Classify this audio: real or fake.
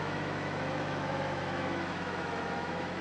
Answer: fake